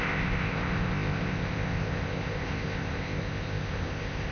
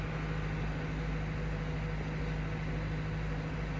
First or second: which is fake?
first